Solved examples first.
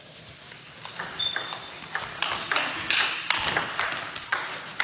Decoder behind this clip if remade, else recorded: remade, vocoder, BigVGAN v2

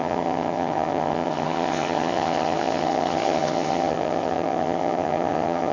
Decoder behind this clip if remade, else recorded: remade, vocoder, HiFi-GAN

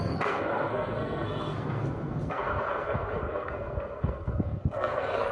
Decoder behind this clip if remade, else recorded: remade, codec, SNAC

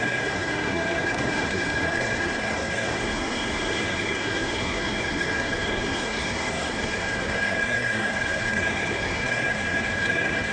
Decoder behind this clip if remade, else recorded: remade, codec, SNAC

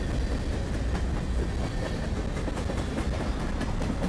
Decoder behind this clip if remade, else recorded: recorded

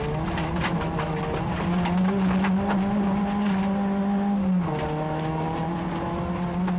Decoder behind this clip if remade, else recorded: recorded